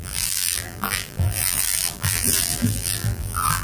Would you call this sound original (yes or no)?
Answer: no